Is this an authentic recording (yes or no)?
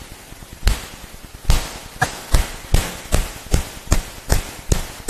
yes